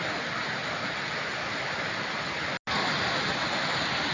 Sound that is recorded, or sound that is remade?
recorded